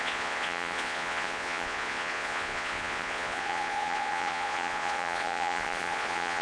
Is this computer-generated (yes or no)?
yes